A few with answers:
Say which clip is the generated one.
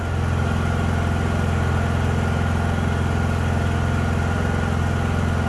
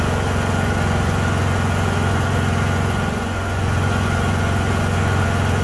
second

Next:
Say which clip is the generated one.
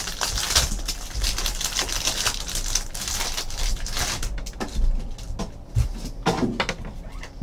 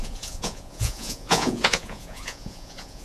second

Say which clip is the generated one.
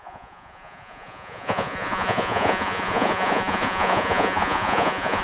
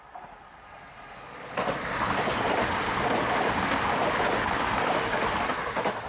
first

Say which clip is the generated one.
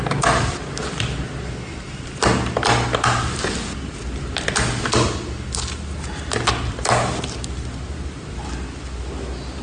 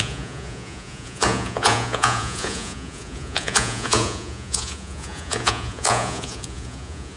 second